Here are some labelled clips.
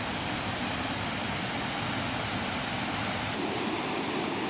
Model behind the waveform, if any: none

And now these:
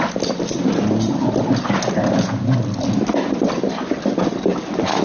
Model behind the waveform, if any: none